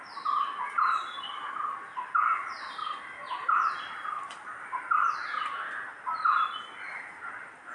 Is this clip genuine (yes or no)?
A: yes